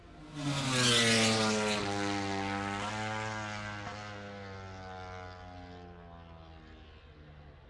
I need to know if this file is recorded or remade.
recorded